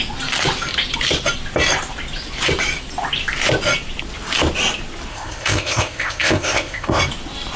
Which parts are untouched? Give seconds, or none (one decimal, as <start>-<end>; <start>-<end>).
0.0-5.1; 7.0-7.6